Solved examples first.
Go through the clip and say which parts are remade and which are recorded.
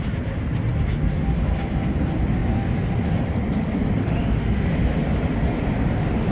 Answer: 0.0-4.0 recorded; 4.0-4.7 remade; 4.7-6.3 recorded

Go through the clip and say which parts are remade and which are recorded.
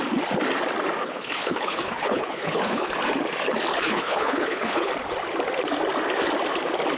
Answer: 0.0-1.0 recorded; 1.0-2.9 remade; 2.9-3.7 recorded; 3.7-4.9 remade; 4.9-7.0 recorded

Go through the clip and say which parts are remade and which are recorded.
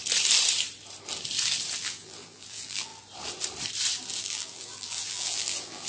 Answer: 0.0-1.8 recorded; 1.8-2.9 remade; 2.9-4.2 recorded; 4.2-5.9 remade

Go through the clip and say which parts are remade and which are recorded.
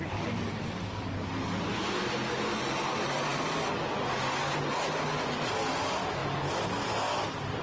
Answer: 0.0-7.6 recorded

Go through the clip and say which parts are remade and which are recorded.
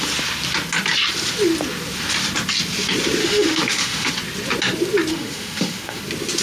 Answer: 0.0-3.2 recorded; 3.2-4.1 remade; 4.1-5.1 recorded; 5.1-6.0 remade; 6.0-6.4 recorded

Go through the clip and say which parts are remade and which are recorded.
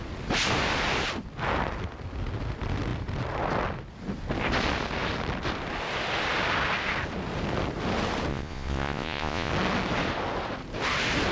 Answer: 0.0-8.3 recorded; 8.3-9.5 remade; 9.5-11.3 recorded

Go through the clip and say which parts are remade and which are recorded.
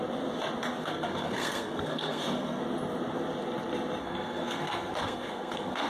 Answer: 0.0-0.8 recorded; 0.8-2.6 remade; 2.6-4.0 recorded; 4.0-5.9 remade